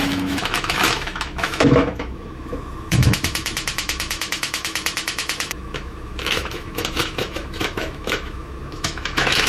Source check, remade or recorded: remade